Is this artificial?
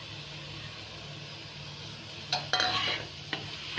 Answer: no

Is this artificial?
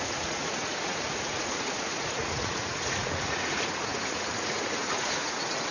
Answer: yes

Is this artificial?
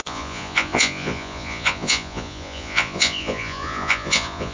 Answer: yes